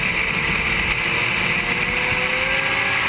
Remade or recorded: recorded